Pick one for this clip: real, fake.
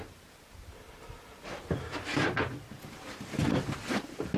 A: fake